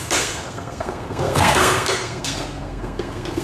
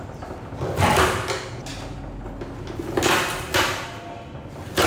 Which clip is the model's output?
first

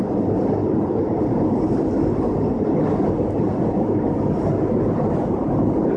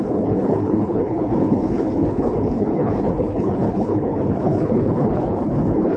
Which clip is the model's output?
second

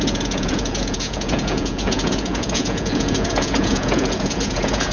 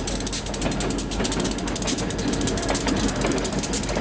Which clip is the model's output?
first